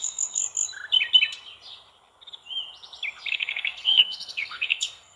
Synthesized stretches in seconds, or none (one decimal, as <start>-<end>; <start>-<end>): 0.0-0.4; 3.3-5.2